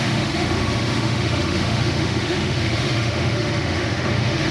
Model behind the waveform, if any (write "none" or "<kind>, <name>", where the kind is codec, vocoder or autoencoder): autoencoder, DAC-VAE